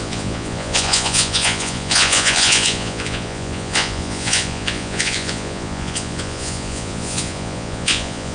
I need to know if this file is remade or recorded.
remade